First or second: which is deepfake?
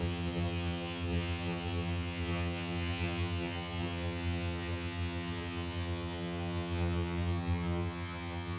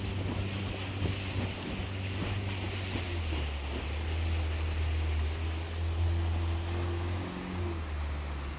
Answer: first